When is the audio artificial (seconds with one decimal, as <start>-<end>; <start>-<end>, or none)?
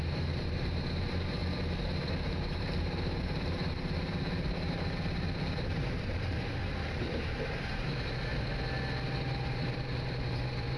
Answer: 0.0-1.4; 2.1-8.3; 9.2-10.8